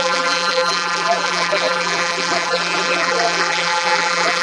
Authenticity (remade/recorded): remade